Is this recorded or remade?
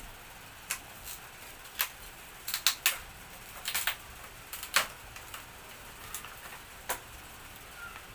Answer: recorded